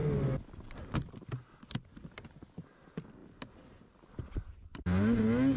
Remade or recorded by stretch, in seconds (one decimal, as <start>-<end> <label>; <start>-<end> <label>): 0.0-5.6 recorded